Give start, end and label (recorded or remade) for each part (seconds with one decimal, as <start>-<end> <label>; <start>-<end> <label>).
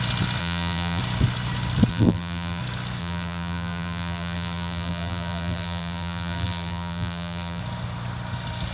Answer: 0.0-0.4 recorded; 0.4-1.0 remade; 1.0-1.9 recorded; 1.9-2.6 remade; 2.6-3.0 recorded; 3.0-7.6 remade; 7.6-8.7 recorded